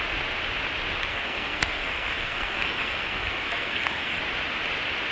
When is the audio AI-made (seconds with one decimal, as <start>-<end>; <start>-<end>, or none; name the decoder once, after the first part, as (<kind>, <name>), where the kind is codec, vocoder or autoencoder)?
1.1-4.2 (codec, SNAC)